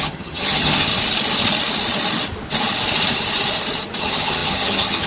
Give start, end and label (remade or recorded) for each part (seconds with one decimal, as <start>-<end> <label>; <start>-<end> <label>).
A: 0.0-0.9 remade; 0.9-4.0 recorded; 4.0-5.1 remade